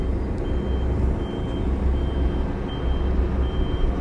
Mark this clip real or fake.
real